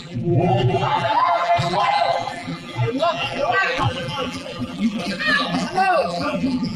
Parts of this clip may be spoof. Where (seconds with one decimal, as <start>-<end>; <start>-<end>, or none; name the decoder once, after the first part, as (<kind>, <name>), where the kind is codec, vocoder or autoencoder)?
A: 0.0-6.8 (vocoder, BigVGAN v2)